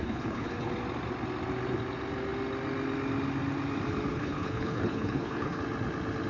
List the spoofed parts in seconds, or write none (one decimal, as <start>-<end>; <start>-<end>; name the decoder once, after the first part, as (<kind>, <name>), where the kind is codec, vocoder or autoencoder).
0.0-0.7 (codec, HILCodec); 4.1-5.6